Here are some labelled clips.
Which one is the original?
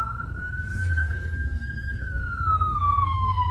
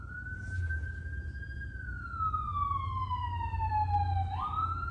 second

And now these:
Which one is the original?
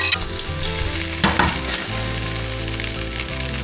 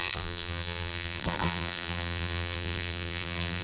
first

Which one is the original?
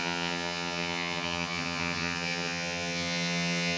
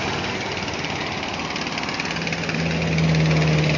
second